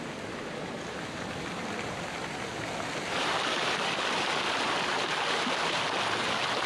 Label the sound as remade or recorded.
recorded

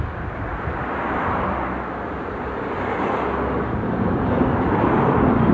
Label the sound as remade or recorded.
recorded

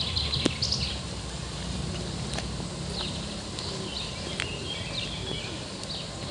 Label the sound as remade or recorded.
recorded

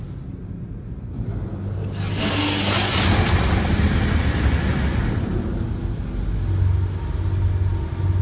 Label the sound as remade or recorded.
recorded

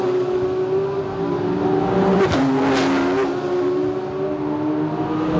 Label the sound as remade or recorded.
recorded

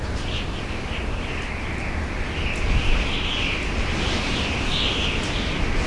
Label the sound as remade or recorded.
recorded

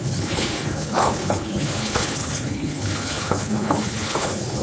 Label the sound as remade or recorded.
remade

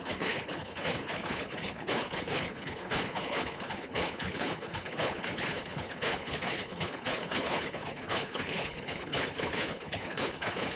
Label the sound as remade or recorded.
remade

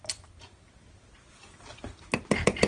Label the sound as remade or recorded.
recorded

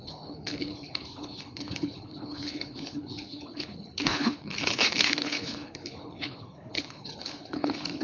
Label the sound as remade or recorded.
remade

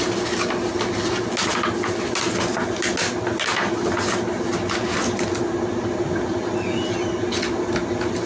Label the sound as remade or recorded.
recorded